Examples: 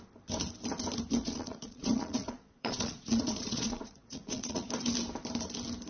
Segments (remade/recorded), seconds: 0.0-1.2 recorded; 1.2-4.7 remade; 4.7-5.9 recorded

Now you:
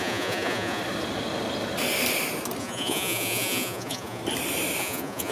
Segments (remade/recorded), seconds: 0.0-0.8 remade; 0.8-2.6 recorded; 2.6-4.2 remade; 4.2-4.8 recorded; 4.8-5.3 remade

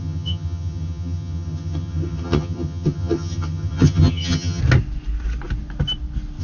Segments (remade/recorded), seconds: 0.0-4.6 remade; 4.6-6.4 recorded